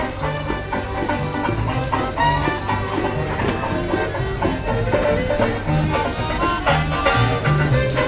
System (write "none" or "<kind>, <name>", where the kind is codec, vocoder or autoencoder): none